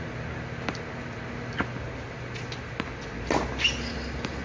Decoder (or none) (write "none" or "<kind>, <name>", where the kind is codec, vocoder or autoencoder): none